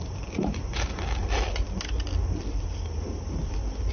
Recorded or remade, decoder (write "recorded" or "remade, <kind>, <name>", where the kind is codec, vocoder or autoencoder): recorded